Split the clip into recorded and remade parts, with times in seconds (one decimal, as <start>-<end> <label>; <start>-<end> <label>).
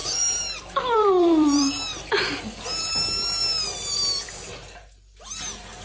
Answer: 0.0-2.4 remade; 2.4-3.4 recorded; 3.4-4.5 remade; 4.5-5.8 recorded